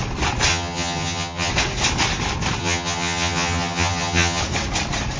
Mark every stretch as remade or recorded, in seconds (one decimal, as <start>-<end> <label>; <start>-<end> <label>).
0.0-0.5 recorded; 0.5-1.5 remade; 1.5-2.6 recorded; 2.6-4.4 remade; 4.4-5.2 recorded